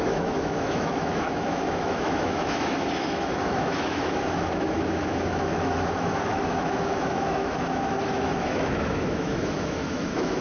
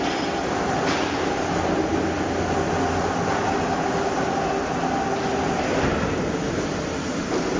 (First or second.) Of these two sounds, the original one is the second